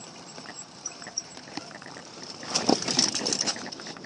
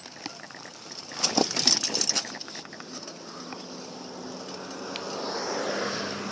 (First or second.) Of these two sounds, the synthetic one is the first